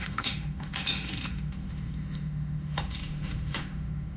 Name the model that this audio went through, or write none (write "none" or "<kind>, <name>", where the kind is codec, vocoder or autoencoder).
autoencoder, DAC-VAE